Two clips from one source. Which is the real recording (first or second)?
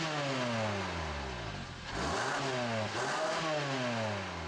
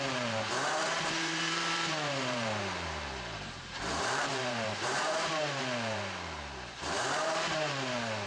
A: first